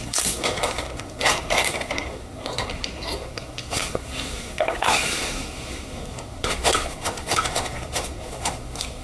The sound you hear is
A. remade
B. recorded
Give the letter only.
A